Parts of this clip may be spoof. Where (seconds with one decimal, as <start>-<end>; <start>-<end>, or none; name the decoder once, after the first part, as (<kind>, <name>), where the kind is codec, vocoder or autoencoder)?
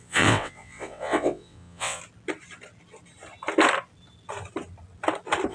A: 0.0-2.0 (vocoder, WaveNeXt)